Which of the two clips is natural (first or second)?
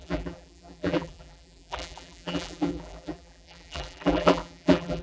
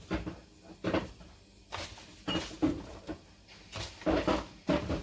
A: second